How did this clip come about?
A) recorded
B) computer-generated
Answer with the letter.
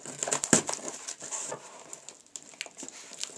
A